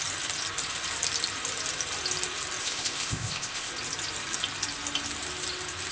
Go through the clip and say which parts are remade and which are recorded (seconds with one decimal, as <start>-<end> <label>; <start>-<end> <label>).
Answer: 0.0-2.6 recorded; 2.6-3.7 remade; 3.7-5.9 recorded